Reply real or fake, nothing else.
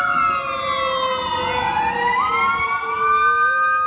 real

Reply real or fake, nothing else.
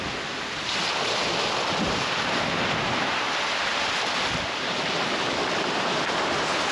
real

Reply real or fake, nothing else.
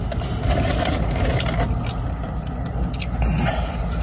real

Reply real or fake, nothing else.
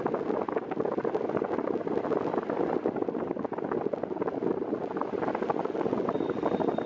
real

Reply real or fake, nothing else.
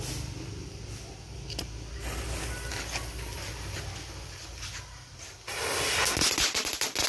real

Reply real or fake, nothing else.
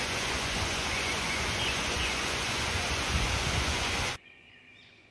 fake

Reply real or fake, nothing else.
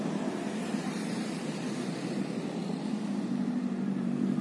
fake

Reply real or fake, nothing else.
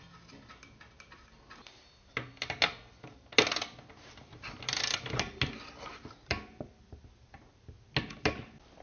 real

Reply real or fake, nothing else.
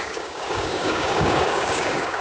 fake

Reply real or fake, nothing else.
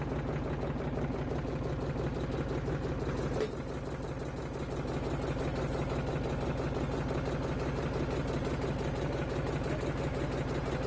real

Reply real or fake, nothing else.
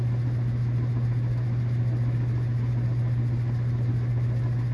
real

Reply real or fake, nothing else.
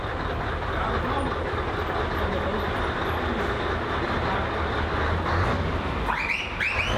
real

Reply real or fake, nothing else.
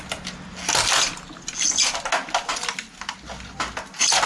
real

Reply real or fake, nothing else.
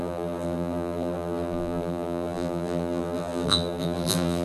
fake